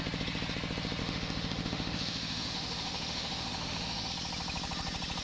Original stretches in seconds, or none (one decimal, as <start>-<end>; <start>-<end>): 0.0-1.0; 4.1-5.2